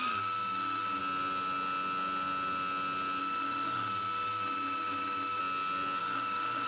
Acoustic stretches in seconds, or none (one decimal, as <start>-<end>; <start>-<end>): 1.0-3.2; 5.4-6.0